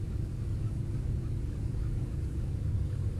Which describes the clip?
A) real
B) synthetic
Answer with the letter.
B